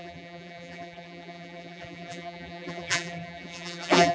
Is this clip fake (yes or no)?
yes